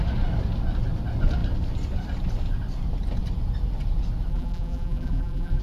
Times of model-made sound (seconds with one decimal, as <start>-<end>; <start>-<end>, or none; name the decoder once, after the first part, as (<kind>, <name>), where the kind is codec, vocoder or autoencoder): 4.3-5.6 (vocoder, BigVGAN v2)